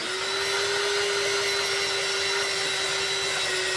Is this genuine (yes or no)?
yes